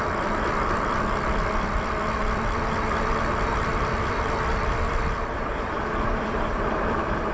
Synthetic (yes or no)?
yes